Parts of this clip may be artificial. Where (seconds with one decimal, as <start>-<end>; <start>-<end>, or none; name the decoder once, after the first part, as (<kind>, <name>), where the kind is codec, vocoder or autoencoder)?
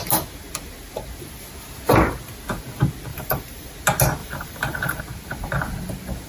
3.1-3.7 (vocoder, BigVGAN v2); 4.2-5.0